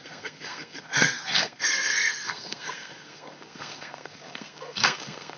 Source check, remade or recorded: remade